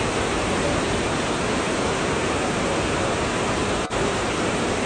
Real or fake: real